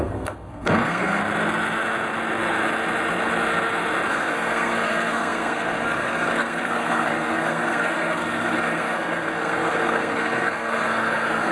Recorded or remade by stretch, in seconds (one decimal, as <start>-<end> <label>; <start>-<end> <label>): 0.0-1.2 remade; 1.2-4.1 recorded; 4.1-11.5 remade